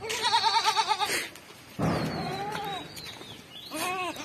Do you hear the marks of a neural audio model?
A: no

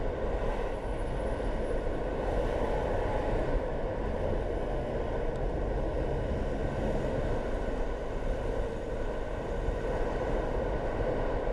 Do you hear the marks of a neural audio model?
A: no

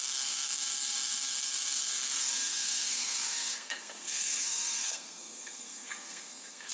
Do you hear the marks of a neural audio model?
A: yes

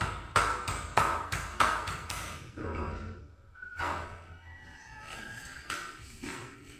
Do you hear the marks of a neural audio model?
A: yes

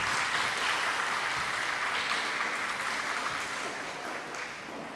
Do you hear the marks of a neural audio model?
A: no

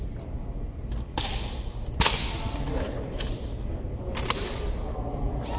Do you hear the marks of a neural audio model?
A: no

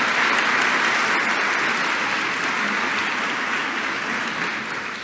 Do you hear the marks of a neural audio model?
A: no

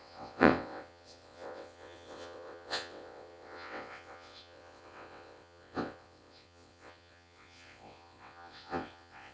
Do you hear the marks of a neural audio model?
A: yes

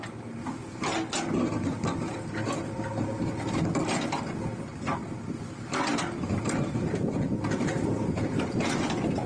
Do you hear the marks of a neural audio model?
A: no